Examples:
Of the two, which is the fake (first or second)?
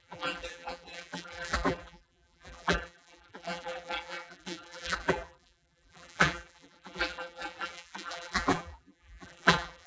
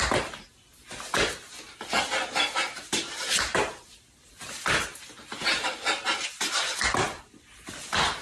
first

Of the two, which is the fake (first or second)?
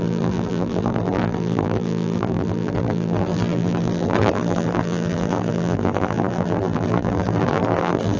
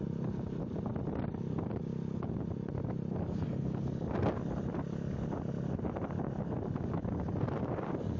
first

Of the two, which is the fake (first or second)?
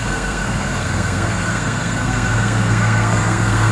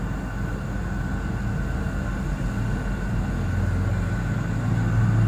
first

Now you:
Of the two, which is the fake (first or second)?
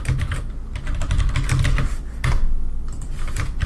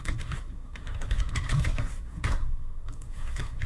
second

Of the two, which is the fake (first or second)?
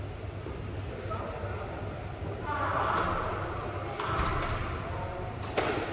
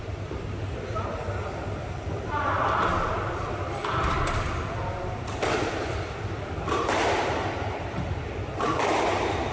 second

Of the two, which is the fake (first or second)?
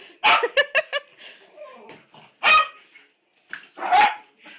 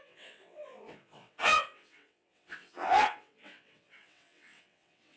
second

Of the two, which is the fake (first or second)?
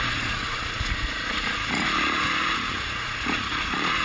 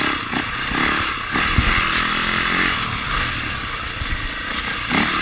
first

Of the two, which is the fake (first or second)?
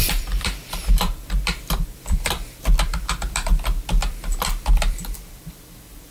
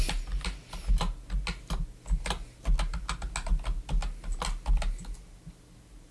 first